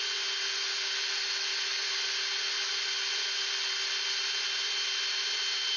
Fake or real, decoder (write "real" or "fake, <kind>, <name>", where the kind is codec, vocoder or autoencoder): real